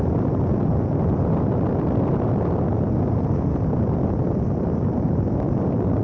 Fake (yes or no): no